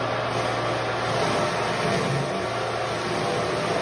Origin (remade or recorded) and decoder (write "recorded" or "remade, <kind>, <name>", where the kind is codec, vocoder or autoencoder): recorded